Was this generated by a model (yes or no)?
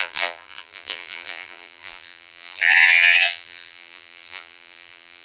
yes